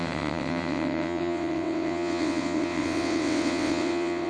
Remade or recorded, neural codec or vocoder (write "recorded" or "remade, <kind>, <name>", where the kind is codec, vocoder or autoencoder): remade, vocoder, WaveNeXt